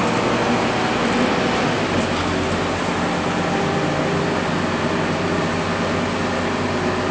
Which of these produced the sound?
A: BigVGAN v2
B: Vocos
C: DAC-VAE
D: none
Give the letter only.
D